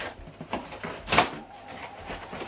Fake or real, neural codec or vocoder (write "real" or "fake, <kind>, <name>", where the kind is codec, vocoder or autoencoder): fake, vocoder, BigVGAN v2